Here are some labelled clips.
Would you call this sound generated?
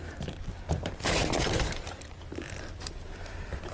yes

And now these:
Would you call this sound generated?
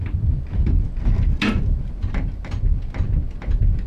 no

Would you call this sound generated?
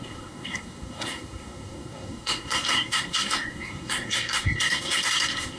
yes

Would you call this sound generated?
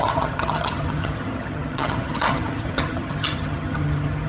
yes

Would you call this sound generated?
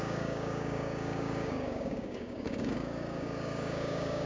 yes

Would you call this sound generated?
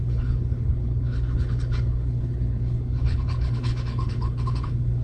yes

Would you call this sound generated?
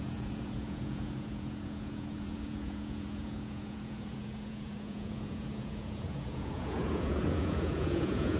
yes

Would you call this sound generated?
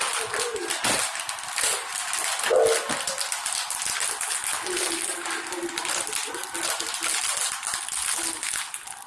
no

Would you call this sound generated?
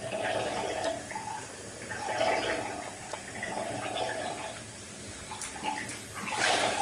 no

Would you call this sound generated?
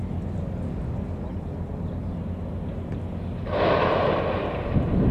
no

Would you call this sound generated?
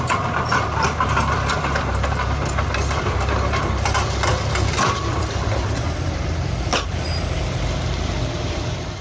yes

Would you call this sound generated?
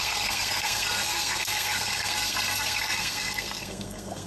yes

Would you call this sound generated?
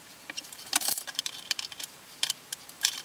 yes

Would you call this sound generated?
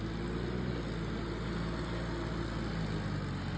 no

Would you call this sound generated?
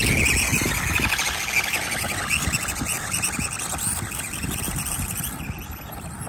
no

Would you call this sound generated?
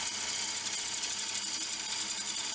no